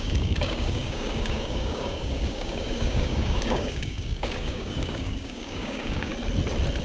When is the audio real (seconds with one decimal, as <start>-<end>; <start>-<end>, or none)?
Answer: 6.1-6.8